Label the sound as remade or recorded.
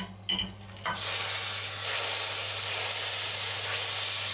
recorded